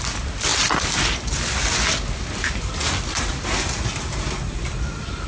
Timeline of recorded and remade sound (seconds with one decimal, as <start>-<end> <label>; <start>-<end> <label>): 0.0-5.3 recorded